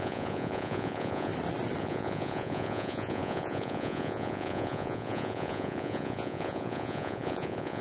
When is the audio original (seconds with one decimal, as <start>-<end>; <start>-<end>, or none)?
1.3-1.8